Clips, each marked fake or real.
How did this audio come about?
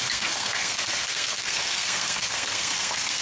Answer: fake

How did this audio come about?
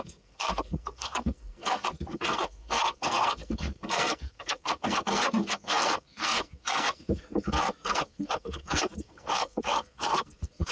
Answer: fake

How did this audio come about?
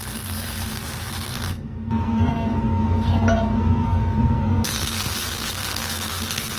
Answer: fake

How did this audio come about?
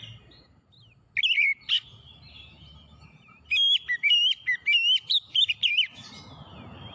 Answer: real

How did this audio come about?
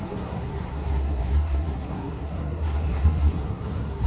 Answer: fake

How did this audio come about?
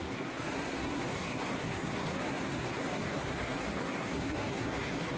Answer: fake